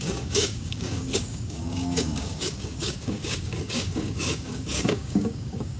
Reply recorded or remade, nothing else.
remade